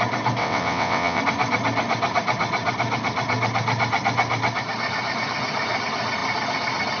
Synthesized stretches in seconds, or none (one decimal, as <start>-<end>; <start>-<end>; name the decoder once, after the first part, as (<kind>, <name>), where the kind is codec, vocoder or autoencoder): 0.4-1.2 (vocoder, WaveNeXt)